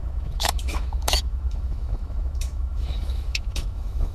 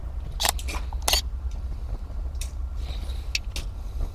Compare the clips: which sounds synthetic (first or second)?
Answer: first